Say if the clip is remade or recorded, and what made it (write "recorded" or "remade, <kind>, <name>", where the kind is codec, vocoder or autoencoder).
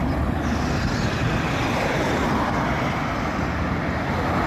recorded